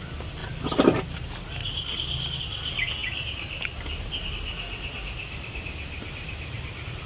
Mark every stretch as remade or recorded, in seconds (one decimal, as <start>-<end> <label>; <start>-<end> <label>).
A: 0.0-0.4 recorded; 0.4-2.4 remade; 2.4-7.1 recorded

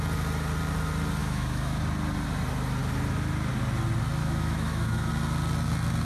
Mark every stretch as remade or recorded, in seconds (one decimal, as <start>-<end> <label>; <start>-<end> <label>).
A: 0.0-1.2 recorded; 1.2-1.8 remade; 1.8-4.2 recorded; 4.2-5.1 remade; 5.1-6.0 recorded

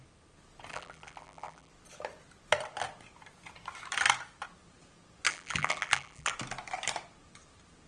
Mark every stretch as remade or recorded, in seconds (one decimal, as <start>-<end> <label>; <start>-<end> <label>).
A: 0.0-0.7 recorded; 0.7-1.7 remade; 1.7-5.3 recorded; 5.3-6.3 remade; 6.3-7.9 recorded

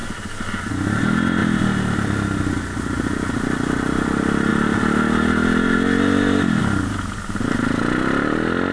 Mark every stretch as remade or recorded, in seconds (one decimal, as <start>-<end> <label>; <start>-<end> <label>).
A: 0.0-8.7 recorded

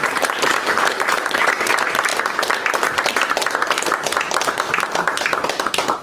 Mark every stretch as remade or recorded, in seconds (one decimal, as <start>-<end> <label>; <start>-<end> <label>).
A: 0.0-0.5 recorded; 0.5-1.7 remade; 1.7-6.0 recorded